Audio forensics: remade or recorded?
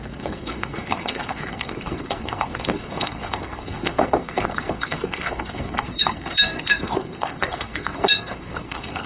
remade